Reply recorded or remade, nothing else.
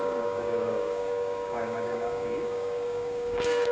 remade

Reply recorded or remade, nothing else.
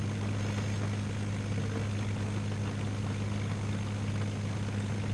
recorded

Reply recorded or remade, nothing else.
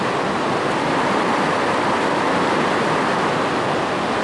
recorded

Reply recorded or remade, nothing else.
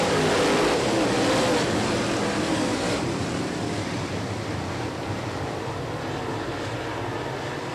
recorded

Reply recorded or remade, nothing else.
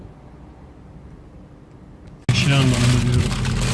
recorded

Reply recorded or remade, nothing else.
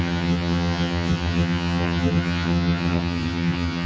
remade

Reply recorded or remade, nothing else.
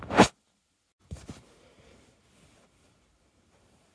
recorded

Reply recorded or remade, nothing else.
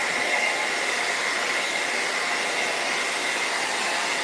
recorded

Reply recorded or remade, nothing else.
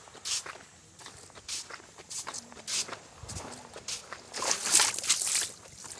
recorded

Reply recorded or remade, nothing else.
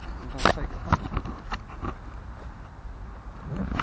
recorded